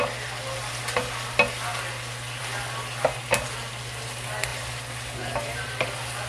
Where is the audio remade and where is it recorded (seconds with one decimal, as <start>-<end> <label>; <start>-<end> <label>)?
0.0-6.3 recorded